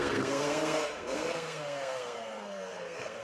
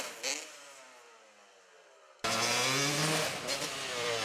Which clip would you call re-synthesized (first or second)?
first